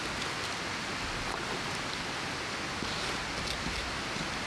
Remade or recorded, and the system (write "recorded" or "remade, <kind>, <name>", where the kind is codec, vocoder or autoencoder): recorded